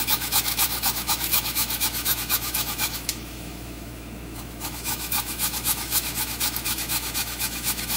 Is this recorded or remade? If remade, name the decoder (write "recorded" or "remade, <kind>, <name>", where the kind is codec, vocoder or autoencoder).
remade, autoencoder, DAC-VAE